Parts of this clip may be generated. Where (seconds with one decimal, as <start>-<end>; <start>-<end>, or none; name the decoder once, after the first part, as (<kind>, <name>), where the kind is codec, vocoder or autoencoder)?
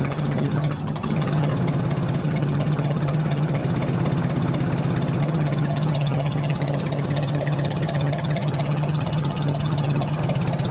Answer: 0.0-1.5 (vocoder, HiFi-GAN); 2.2-3.6; 5.2-10.2